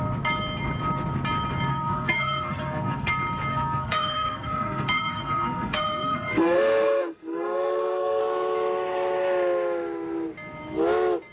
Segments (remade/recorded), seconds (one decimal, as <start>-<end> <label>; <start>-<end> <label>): 0.0-1.7 recorded; 1.7-3.1 remade; 3.1-3.5 recorded; 3.5-8.2 remade; 8.2-11.3 recorded